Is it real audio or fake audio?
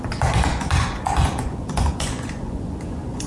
fake